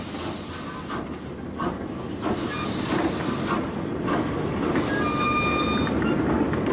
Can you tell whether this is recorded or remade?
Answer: recorded